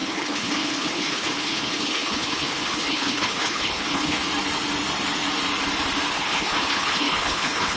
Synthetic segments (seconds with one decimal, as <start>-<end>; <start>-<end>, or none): 0.0-4.2; 6.1-7.8